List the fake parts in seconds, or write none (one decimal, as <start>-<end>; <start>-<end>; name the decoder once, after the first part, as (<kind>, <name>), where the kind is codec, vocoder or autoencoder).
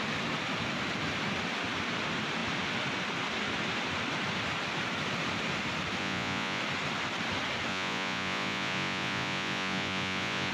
6.0-6.6 (vocoder, Vocos); 7.7-10.5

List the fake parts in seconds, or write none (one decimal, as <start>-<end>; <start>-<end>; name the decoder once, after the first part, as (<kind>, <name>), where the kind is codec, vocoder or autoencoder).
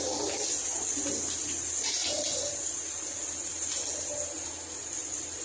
none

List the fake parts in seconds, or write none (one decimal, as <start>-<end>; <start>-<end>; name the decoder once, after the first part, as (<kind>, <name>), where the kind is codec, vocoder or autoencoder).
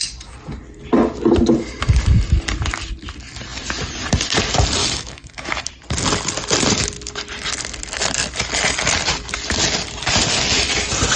4.8-5.6 (autoencoder, DAC-VAE)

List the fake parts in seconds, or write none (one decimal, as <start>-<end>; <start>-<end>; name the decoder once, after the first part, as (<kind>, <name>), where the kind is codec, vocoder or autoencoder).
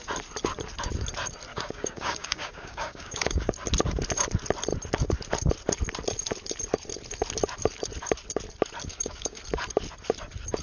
1.5-3.5 (codec, DAC); 8.9-9.4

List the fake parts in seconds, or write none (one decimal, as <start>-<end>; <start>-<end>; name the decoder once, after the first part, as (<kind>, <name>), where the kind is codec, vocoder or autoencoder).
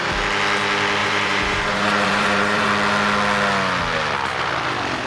1.0-2.7 (vocoder, Vocos)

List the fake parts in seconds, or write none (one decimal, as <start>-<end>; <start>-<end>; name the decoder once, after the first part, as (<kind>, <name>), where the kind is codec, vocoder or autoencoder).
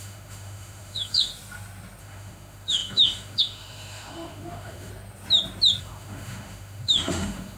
0.0-1.3 (autoencoder, DAC-VAE); 2.0-4.9; 5.8-7.6